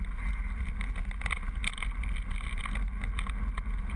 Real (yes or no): yes